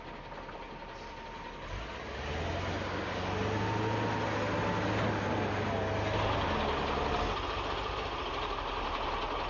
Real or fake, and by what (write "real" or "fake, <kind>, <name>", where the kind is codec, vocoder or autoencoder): real